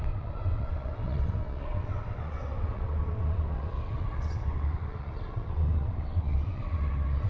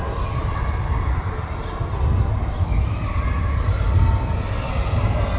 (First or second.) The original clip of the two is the second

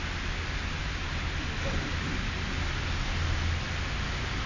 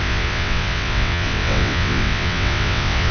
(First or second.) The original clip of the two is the first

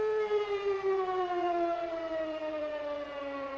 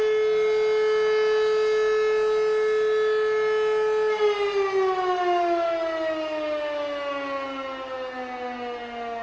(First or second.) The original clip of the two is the second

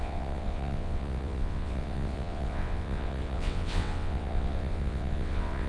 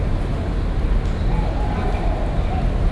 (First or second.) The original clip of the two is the second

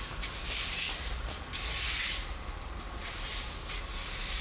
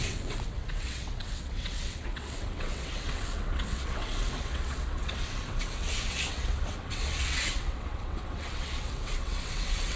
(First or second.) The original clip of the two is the first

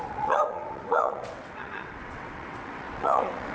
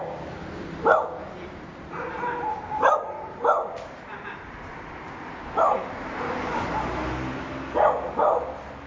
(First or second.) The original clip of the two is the second